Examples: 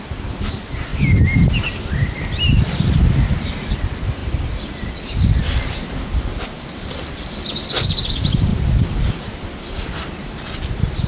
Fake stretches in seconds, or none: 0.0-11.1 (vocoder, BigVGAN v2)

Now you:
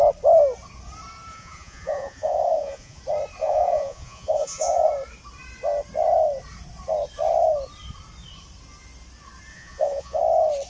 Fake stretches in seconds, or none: 1.3-3.0 (vocoder, Vocos); 3.4-4.9; 9.5-10.2

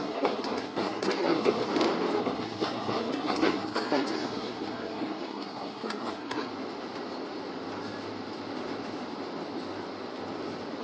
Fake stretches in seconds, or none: 0.0-1.7 (codec, SNAC); 2.2-6.5

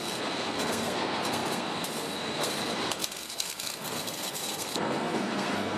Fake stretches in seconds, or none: 0.0-5.8 (codec, SNAC)

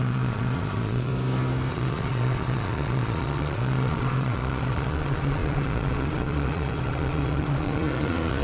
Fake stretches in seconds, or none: 0.0-1.1 (vocoder, Vocos); 1.7-8.4

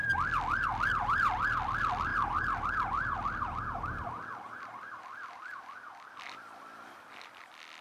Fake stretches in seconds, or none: none

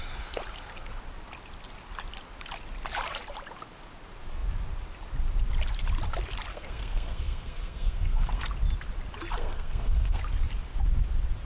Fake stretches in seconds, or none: 6.5-8.4 (codec, SNAC); 9.4-10.2

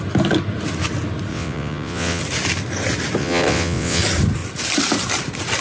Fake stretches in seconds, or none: 1.3-2.2 (vocoder, WaveNeXt); 3.2-4.0